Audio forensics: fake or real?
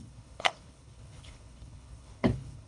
fake